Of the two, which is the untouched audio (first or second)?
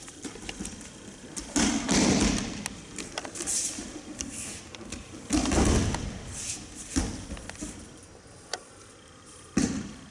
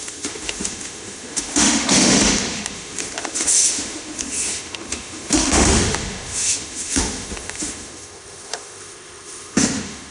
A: first